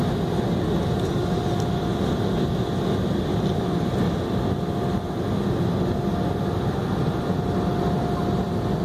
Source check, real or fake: real